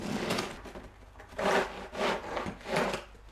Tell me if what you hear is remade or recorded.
recorded